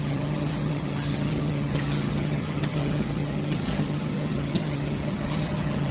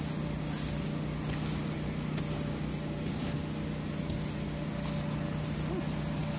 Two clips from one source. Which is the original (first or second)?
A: second